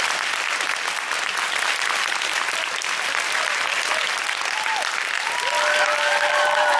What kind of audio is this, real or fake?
real